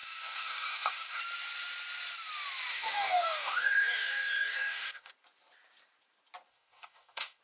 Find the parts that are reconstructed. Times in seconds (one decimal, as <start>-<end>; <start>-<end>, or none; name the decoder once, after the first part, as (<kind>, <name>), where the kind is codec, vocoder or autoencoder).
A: 0.0-1.2 (codec, DAC); 2.7-5.1; 6.5-7.4